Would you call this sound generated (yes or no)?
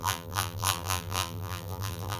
yes